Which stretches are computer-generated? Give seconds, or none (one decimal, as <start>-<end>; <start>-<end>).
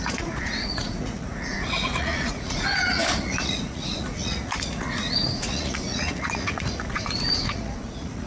0.0-8.3